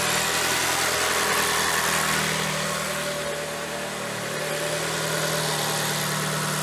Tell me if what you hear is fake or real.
real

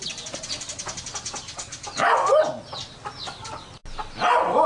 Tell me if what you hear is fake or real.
real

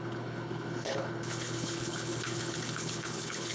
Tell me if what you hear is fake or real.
fake